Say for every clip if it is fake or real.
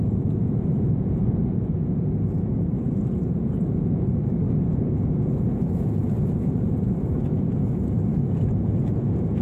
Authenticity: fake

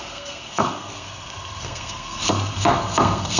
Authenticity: fake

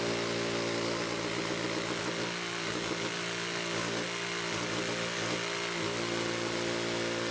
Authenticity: real